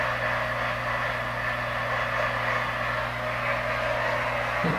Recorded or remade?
recorded